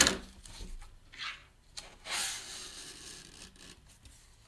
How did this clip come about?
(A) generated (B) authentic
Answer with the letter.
B